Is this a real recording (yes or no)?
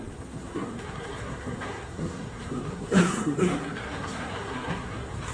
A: no